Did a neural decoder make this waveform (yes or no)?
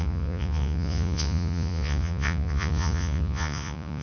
yes